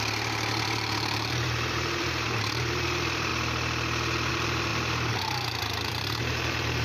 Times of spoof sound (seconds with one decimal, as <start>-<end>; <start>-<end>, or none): 0.0-3.3; 4.3-6.8